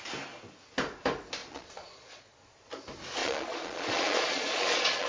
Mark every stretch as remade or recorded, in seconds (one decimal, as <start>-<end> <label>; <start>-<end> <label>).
0.0-1.4 recorded; 1.4-2.7 remade; 2.7-3.2 recorded; 3.2-5.1 remade